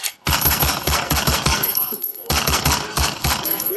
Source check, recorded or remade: remade